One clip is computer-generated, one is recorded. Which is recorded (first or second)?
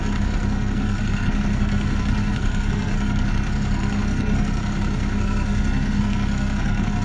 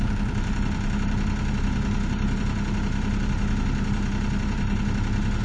second